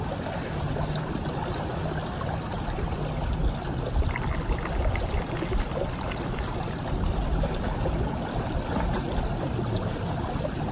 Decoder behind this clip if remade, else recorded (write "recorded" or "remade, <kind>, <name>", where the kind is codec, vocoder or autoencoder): recorded